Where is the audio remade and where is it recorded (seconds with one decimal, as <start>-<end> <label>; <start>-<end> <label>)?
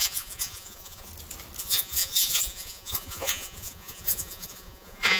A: 0.0-1.1 remade; 1.1-1.6 recorded; 1.6-5.2 remade